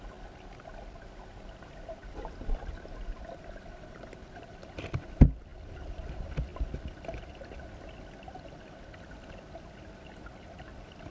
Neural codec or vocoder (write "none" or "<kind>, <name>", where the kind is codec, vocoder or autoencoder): none